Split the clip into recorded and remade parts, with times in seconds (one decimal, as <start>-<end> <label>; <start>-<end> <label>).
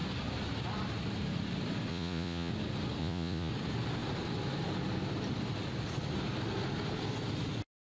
0.0-1.9 recorded; 1.9-2.5 remade; 2.5-3.0 recorded; 3.0-3.5 remade; 3.5-8.0 recorded